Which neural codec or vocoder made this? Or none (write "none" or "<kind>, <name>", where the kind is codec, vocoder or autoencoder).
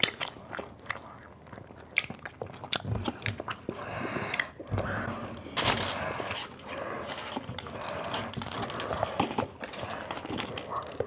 none